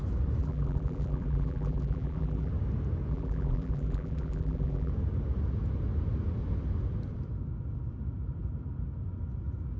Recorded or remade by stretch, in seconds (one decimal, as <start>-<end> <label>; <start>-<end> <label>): 0.0-0.4 recorded; 0.4-2.5 remade; 2.5-3.1 recorded; 3.1-4.9 remade; 4.9-9.8 recorded